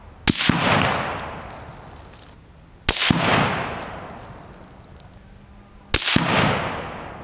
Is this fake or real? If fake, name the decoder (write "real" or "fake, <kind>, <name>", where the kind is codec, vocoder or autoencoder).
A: real